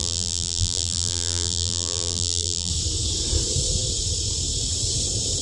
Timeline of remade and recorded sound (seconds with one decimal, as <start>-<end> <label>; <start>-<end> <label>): 0.0-2.7 remade; 2.7-5.4 recorded

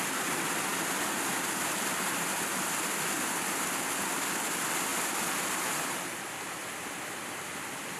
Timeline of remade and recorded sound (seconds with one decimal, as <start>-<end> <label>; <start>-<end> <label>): 0.0-8.0 recorded

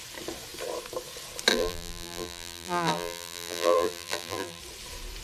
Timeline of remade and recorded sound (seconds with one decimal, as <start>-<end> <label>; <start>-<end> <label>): 0.0-1.5 recorded; 1.5-4.6 remade; 4.6-5.2 recorded

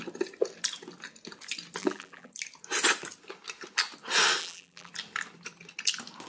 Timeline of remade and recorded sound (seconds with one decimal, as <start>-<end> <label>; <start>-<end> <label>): 0.0-1.8 recorded; 1.8-2.3 remade; 2.3-4.4 recorded; 4.4-4.9 remade; 4.9-6.3 recorded

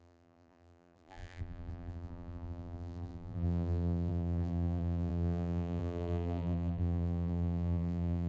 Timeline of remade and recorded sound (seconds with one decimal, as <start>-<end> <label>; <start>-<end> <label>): 0.0-8.3 remade

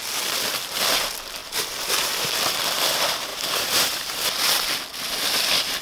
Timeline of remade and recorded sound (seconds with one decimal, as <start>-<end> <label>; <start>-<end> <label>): 0.0-1.4 recorded; 1.4-2.3 remade; 2.3-3.3 recorded; 3.3-4.2 remade; 4.2-5.8 recorded

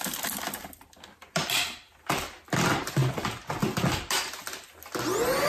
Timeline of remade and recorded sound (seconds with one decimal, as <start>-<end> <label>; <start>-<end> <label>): 0.0-5.5 recorded